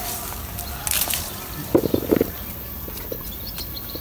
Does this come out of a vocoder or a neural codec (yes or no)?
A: yes